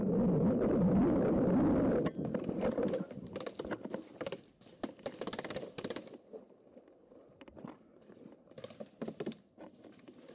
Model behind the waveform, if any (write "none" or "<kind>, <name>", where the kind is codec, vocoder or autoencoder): none